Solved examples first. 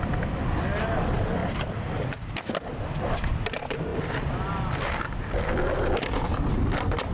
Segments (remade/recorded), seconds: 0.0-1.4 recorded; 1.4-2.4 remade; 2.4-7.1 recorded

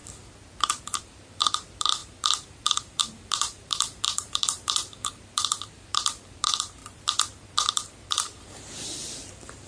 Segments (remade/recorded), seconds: 0.0-0.8 recorded; 0.8-6.8 remade; 6.8-7.4 recorded; 7.4-9.7 remade

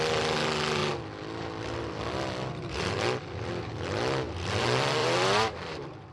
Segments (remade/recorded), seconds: 0.0-5.0 recorded; 5.0-6.1 remade

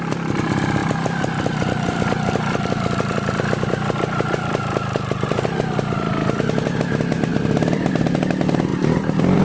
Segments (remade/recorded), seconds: 0.0-0.8 recorded; 0.8-5.5 remade; 5.5-7.3 recorded; 7.3-7.9 remade; 7.9-9.4 recorded

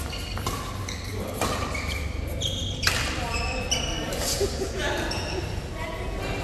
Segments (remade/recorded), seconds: 0.0-1.1 recorded; 1.1-4.6 remade; 4.6-6.4 recorded

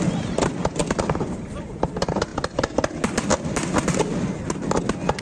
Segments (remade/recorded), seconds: 0.0-2.3 remade; 2.3-4.8 recorded; 4.8-5.2 remade

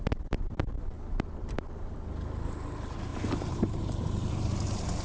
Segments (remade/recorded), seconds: 0.0-3.1 recorded; 3.1-5.0 remade